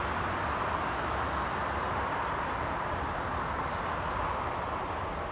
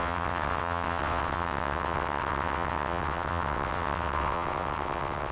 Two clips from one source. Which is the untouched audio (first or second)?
first